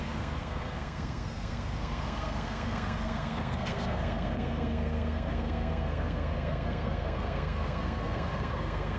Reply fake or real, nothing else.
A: fake